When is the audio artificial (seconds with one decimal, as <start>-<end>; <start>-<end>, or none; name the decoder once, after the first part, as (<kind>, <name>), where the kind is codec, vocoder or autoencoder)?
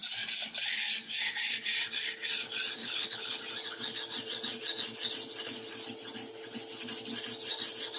2.8-3.4 (codec, HILCodec)